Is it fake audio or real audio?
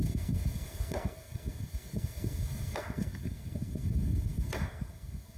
fake